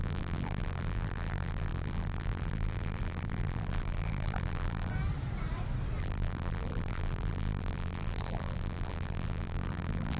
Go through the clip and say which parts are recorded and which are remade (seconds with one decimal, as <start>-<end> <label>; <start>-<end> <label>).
0.0-4.9 remade; 4.9-6.0 recorded; 6.0-10.2 remade